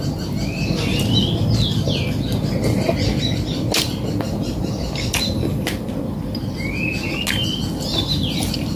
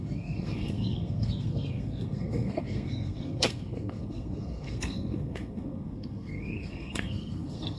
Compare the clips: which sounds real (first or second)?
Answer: first